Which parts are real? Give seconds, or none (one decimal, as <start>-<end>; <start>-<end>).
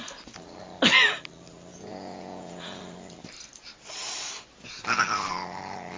0.0-1.7; 2.8-6.0